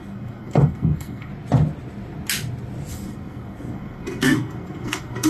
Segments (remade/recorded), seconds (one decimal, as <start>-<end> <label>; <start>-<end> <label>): 0.0-1.3 remade; 1.3-2.9 recorded; 2.9-5.3 remade